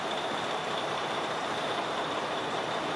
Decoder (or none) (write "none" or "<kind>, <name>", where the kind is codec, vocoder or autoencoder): vocoder, BigVGAN v2